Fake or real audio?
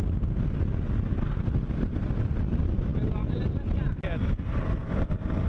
real